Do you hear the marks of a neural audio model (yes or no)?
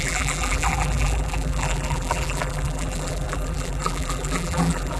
yes